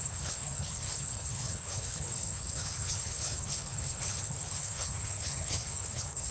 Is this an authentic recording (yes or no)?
no